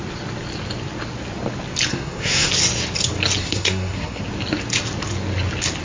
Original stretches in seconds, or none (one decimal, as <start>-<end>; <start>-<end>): 0.0-1.9; 2.5-3.4; 4.2-5.8